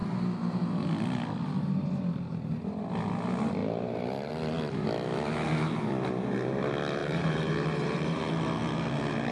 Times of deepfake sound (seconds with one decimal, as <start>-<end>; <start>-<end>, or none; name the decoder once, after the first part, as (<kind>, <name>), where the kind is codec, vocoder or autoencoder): 3.6-4.3 (vocoder, BigVGAN v2); 7.0-8.3